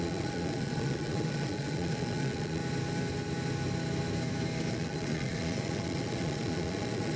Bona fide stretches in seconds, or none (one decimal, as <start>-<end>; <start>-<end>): 2.6-4.7